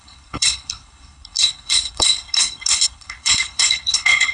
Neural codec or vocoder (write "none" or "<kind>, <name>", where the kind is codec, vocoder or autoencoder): codec, HILCodec